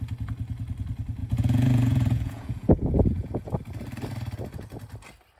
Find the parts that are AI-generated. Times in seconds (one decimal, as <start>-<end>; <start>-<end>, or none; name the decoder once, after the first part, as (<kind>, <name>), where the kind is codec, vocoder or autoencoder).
1.2-3.5 (vocoder, Vocos)